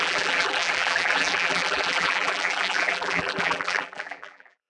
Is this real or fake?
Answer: fake